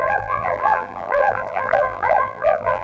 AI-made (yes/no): yes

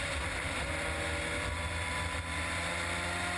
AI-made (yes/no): no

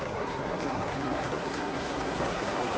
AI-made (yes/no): yes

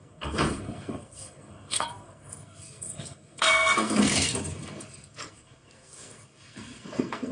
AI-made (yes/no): yes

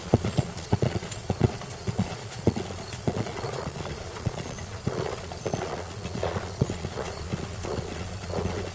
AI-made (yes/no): yes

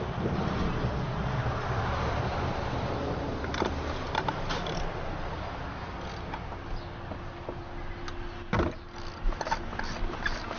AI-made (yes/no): no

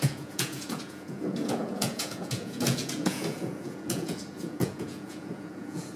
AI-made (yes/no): yes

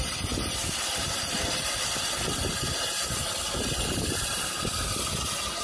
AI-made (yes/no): no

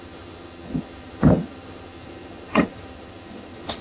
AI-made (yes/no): yes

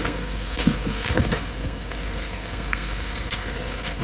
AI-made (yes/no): yes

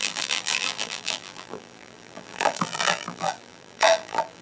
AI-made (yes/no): yes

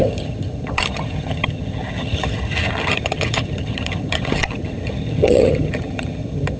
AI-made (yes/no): yes